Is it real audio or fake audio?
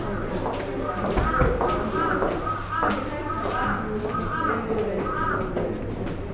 real